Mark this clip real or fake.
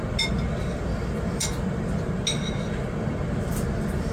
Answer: real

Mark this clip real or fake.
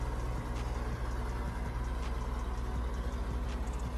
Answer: real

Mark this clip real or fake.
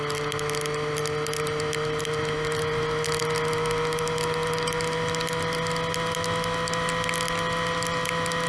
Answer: real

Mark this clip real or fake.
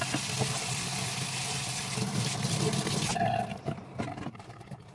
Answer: real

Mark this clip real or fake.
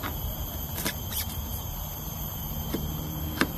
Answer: fake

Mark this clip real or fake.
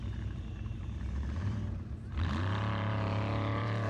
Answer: fake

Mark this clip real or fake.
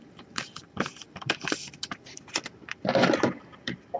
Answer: real